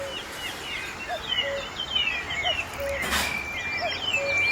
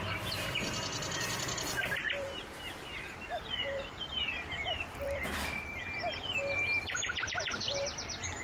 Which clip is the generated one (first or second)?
second